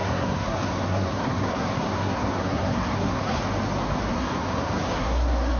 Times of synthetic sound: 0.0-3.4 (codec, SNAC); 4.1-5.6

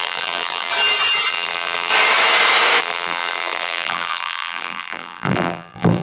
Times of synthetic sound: 0.0-0.7 (vocoder, BigVGAN v2); 1.3-1.9; 2.8-6.0

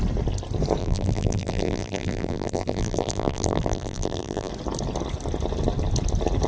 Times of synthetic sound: 0.8-4.5 (vocoder, BigVGAN v2)

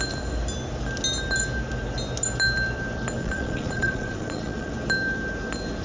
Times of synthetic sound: 3.2-4.7 (vocoder, Vocos)

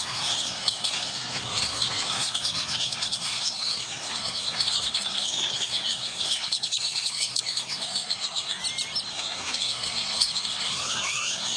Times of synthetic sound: 0.0-8.6 (codec, SNAC); 9.1-11.6